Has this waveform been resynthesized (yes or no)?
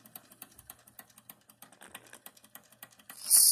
no